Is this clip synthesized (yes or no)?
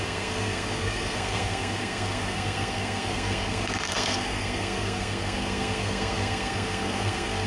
yes